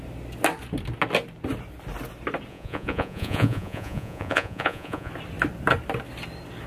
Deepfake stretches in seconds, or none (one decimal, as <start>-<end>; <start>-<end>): 2.5-5.1